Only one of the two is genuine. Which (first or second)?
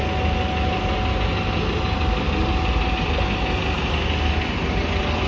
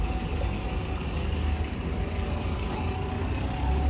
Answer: first